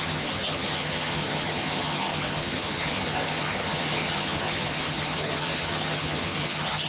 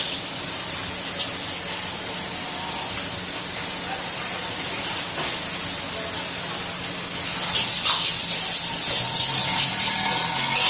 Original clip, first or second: second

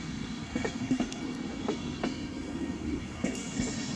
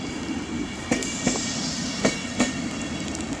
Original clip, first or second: second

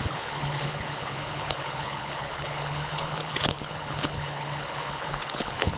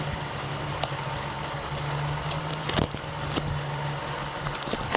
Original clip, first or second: second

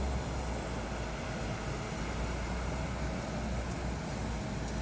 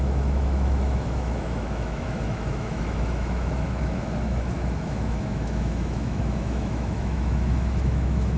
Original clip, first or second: first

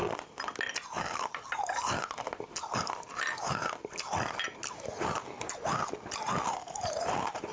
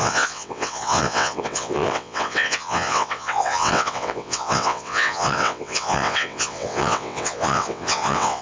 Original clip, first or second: first